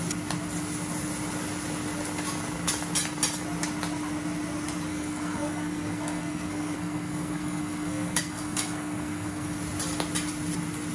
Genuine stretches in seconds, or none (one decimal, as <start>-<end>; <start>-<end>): 0.0-4.9; 9.6-10.9